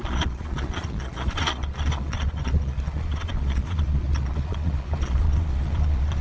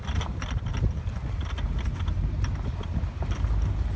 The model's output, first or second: first